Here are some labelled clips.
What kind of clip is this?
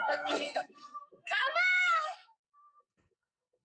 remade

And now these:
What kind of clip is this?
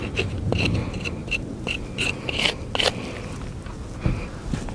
recorded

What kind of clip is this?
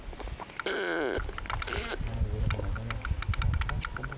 recorded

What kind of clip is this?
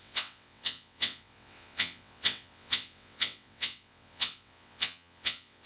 remade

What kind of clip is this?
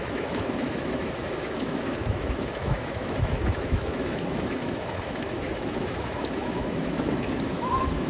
remade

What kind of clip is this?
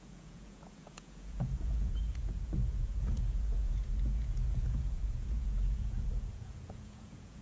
remade